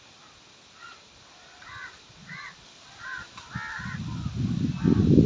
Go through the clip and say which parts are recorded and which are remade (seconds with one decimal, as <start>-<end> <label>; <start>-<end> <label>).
0.0-5.3 recorded